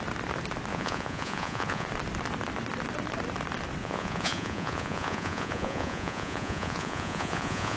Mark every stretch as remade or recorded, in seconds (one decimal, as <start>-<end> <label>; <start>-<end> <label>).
0.0-0.7 recorded; 0.7-1.9 remade; 1.9-3.8 recorded; 3.8-7.8 remade

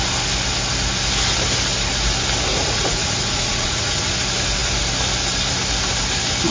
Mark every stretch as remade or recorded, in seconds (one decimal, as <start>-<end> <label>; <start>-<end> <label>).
0.0-2.5 recorded; 2.5-4.1 remade; 4.1-6.5 recorded

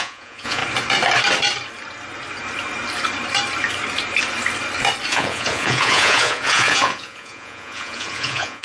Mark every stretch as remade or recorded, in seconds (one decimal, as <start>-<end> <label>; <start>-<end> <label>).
0.0-0.6 remade; 0.6-5.1 recorded; 5.1-8.6 remade

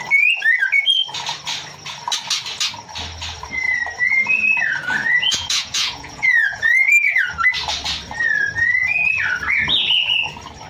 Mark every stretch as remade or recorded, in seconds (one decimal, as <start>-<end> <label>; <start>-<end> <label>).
0.0-5.0 recorded; 5.0-6.9 remade; 6.9-10.7 recorded

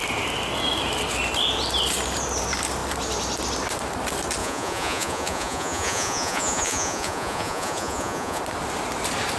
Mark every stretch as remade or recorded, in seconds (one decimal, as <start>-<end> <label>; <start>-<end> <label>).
0.0-4.4 recorded; 4.4-8.4 remade; 8.4-9.4 recorded